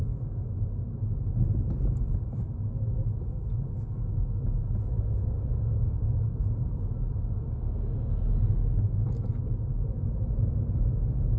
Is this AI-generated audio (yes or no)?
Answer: no